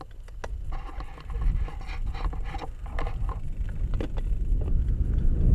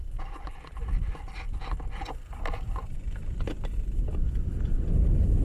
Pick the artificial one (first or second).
second